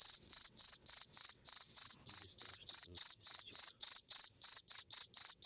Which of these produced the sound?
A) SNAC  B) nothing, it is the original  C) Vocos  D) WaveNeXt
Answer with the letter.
D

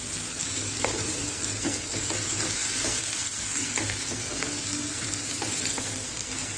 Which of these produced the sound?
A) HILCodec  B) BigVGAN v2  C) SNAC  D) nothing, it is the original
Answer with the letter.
C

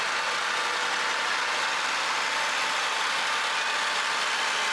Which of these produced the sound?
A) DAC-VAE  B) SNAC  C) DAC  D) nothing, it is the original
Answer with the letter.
D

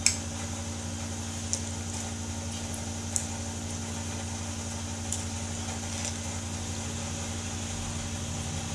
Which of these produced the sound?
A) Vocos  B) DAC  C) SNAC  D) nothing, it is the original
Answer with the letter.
D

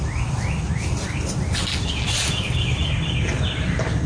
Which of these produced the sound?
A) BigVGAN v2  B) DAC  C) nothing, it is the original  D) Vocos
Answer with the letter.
C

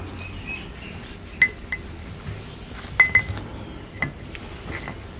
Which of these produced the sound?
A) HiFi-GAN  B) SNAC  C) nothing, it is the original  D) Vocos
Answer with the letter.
C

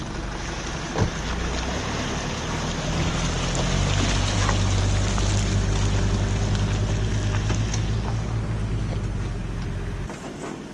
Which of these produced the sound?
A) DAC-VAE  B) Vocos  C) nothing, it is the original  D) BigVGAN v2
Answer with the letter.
C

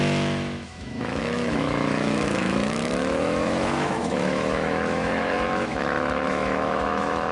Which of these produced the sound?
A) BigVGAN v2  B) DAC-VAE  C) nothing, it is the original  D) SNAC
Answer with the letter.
B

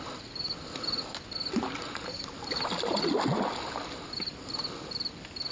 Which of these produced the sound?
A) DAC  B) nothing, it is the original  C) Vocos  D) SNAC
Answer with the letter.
B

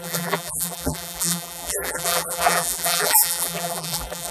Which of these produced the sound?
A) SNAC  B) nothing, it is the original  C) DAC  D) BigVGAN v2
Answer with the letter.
D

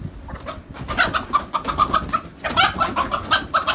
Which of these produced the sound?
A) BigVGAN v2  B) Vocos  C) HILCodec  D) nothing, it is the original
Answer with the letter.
D